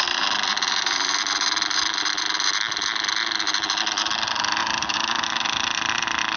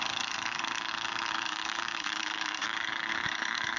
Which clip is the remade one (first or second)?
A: second